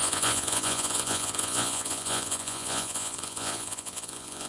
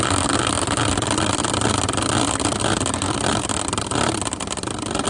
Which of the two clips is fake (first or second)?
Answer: first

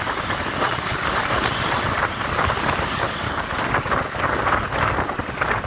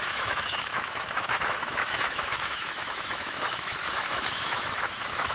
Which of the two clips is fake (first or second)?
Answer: second